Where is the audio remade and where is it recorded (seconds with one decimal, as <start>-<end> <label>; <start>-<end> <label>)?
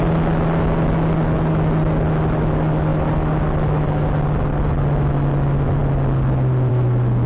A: 0.0-7.3 recorded